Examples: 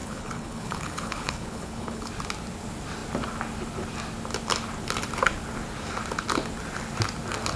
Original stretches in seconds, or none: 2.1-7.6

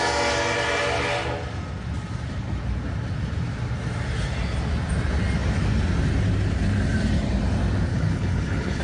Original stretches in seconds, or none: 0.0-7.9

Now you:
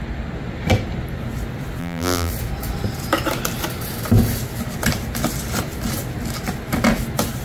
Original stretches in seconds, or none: 0.0-1.8; 2.3-7.4